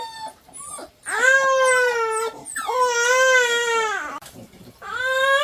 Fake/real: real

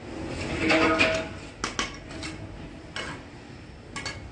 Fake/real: real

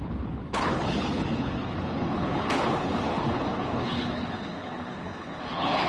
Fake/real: fake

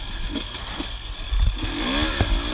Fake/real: real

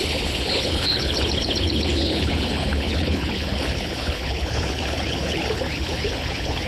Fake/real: fake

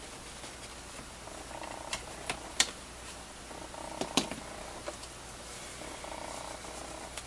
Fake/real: real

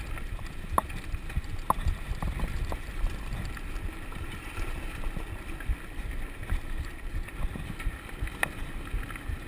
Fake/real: fake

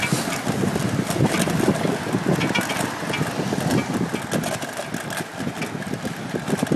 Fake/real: real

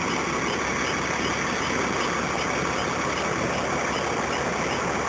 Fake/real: real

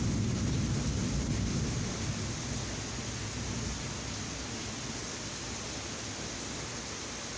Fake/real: real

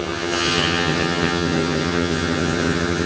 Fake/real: fake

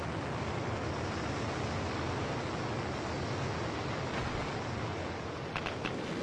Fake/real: real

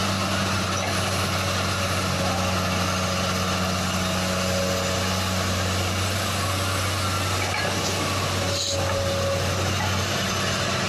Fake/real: real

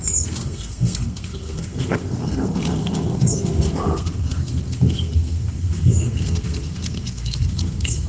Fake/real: fake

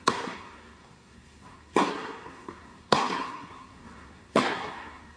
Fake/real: fake